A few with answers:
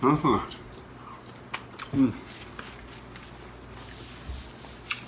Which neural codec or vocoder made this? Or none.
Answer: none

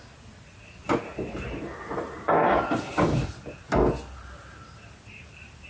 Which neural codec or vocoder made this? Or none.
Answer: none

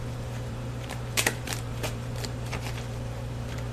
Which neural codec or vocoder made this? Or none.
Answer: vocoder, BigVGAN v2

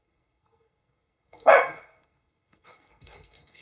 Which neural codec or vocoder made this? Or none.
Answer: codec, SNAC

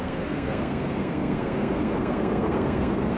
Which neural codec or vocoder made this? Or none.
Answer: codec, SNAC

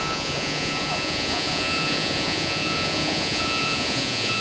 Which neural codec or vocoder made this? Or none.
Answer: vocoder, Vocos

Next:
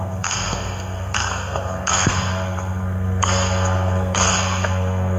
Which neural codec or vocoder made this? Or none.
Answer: codec, SNAC